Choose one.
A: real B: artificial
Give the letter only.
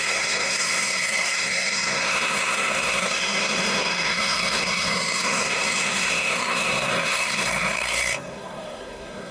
B